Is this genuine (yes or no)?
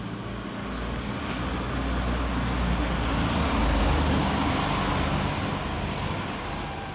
yes